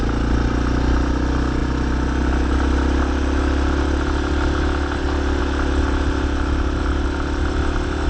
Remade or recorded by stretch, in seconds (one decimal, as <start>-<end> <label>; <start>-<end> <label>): 0.0-8.1 recorded